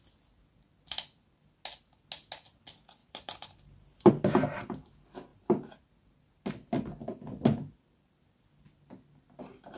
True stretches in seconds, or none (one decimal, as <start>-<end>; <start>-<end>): 0.0-3.0; 4.1-5.3; 6.5-9.8